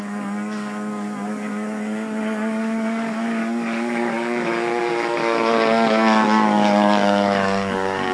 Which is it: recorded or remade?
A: remade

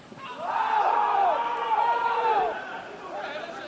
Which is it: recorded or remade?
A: recorded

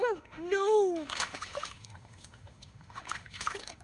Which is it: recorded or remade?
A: remade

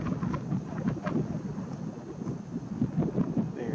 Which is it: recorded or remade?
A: recorded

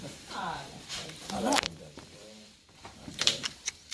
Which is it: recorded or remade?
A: remade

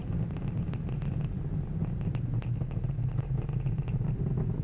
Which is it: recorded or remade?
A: recorded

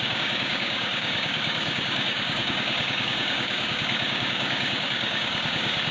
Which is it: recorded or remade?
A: remade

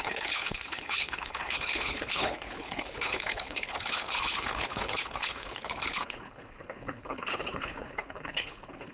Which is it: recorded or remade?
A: remade